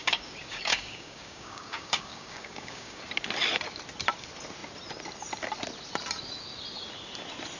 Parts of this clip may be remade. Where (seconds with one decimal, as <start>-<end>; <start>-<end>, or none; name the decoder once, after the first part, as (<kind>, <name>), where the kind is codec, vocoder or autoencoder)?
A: 0.0-3.0 (codec, DAC)